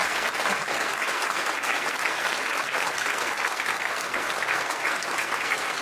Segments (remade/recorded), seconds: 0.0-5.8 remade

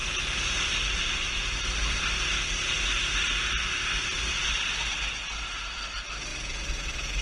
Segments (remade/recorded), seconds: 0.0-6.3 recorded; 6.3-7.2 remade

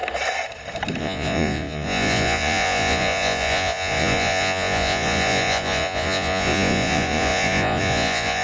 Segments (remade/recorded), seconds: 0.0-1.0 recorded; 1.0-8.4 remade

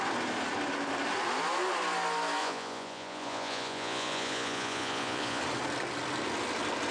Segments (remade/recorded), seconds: 0.0-2.4 recorded; 2.4-5.4 remade; 5.4-6.9 recorded